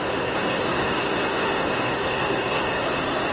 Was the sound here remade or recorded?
remade